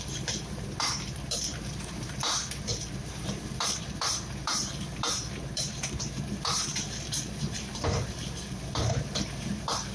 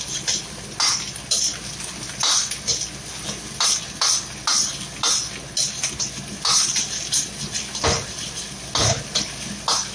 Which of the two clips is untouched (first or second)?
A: second